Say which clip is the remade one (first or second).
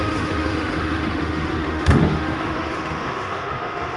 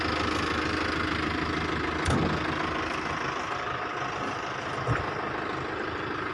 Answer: first